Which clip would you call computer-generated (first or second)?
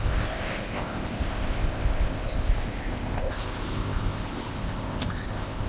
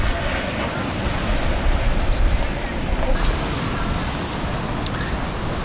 first